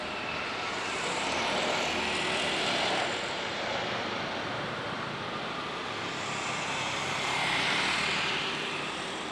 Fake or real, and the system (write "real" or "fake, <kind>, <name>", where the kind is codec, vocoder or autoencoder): fake, vocoder, BigVGAN v2